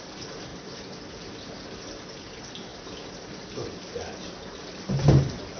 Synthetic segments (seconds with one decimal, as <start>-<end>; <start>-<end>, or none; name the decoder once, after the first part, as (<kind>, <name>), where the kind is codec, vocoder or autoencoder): none